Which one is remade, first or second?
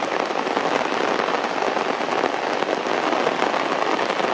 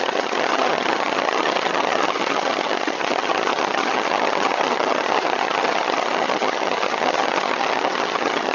second